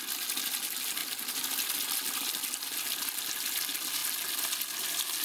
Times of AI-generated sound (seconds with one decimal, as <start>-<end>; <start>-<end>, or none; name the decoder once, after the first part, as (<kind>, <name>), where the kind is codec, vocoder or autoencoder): none